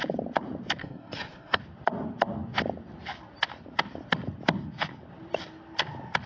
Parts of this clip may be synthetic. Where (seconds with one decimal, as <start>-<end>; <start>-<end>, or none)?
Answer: 0.8-1.6